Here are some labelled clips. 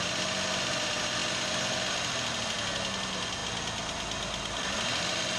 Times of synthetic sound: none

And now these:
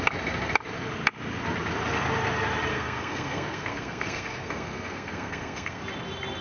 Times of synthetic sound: 2.7-5.8 (codec, SNAC)